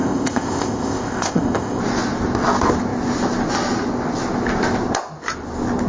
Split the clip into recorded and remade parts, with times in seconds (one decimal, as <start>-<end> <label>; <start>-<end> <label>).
0.0-1.8 remade; 1.8-5.9 recorded